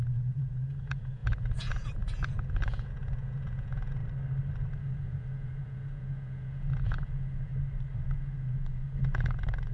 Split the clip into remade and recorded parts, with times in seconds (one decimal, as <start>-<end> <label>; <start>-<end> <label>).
0.0-4.0 remade; 4.0-4.7 recorded; 4.7-7.5 remade; 7.5-8.0 recorded; 8.0-9.7 remade